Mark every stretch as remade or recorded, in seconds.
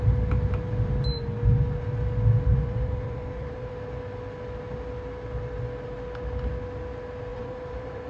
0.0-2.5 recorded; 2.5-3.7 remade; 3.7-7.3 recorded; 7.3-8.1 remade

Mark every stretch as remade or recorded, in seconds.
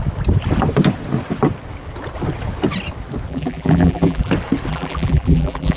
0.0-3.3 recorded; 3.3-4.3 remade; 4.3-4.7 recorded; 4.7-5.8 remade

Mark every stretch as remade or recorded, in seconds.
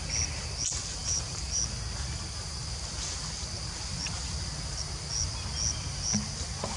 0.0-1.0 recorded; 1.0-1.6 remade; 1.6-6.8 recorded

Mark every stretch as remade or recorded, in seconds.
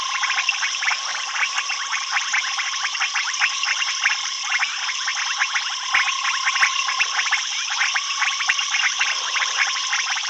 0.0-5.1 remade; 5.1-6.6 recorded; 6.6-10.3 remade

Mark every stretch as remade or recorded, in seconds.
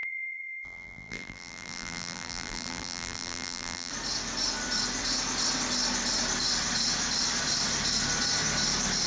0.0-3.9 remade; 3.9-9.1 recorded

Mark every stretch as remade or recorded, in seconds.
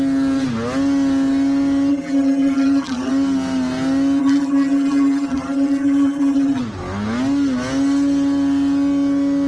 0.0-1.9 recorded; 1.9-3.1 remade; 3.1-4.2 recorded; 4.2-6.6 remade; 6.6-9.5 recorded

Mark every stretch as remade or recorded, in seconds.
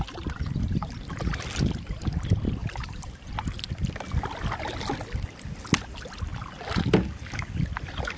0.0-2.6 recorded; 2.6-3.3 remade; 3.3-8.2 recorded